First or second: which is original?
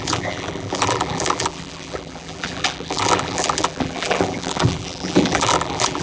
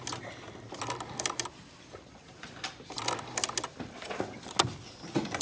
second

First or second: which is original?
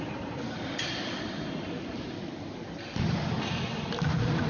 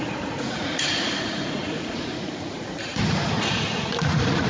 first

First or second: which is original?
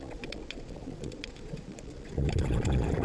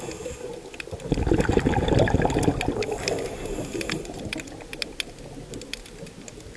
second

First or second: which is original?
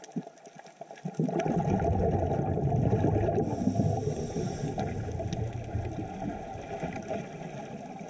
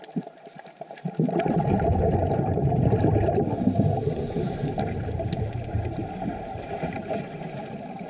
first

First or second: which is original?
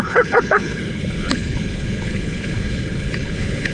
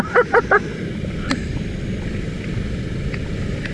second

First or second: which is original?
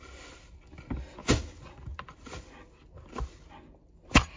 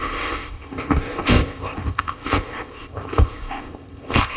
first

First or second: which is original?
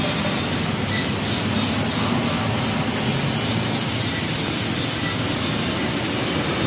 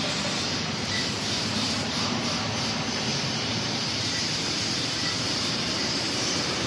first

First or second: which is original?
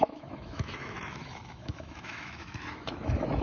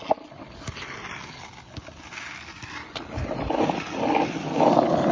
second